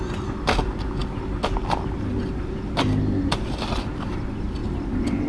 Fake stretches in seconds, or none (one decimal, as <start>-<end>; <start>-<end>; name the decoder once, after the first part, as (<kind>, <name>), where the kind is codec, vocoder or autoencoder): none